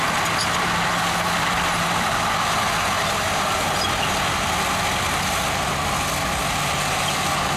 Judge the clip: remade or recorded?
recorded